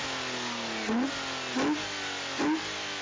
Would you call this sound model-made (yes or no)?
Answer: no